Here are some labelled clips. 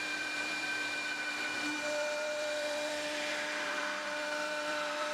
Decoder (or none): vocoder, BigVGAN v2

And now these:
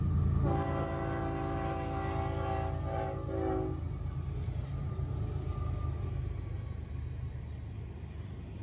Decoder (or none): none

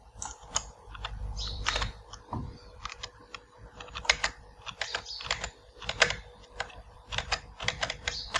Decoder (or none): vocoder, BigVGAN v2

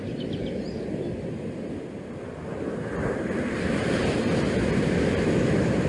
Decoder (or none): none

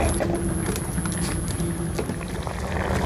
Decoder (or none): none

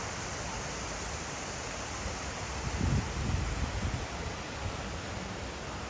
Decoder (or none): none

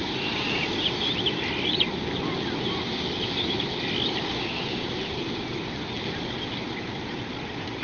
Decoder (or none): none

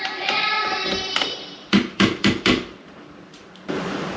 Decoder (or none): vocoder, BigVGAN v2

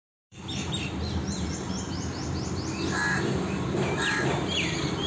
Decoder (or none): vocoder, BigVGAN v2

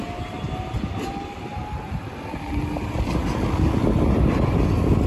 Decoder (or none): none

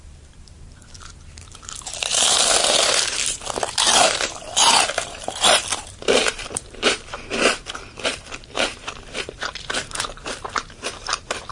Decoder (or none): vocoder, BigVGAN v2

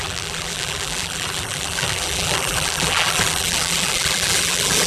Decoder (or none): vocoder, BigVGAN v2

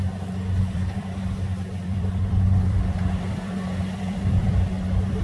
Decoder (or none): vocoder, BigVGAN v2